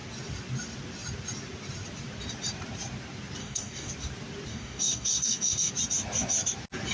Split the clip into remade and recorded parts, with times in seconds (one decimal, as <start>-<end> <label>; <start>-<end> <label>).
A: 0.0-3.4 recorded; 3.4-3.9 remade; 3.9-4.5 recorded; 4.5-5.7 remade; 5.7-6.9 recorded